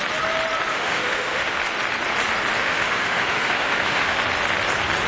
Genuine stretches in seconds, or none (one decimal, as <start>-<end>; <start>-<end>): 0.0-0.7; 1.6-2.6; 4.2-5.1